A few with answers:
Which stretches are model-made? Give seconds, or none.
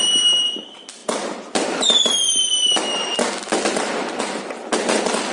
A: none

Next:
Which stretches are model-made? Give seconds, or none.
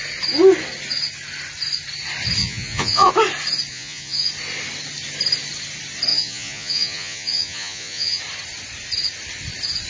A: 2.4-3.1 (vocoder, Vocos); 3.7-4.3; 6.1-8.2